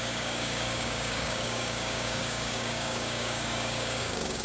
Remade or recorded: remade